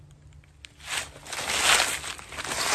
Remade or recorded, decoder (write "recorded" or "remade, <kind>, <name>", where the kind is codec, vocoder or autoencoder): recorded